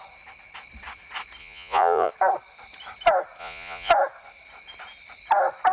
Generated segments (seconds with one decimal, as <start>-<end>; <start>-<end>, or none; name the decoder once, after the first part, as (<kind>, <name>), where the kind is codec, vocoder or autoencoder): 1.4-2.1 (vocoder, Vocos); 3.4-3.9